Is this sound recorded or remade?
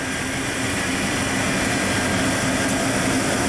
recorded